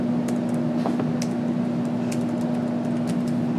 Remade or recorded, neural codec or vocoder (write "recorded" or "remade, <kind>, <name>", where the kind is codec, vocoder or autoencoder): recorded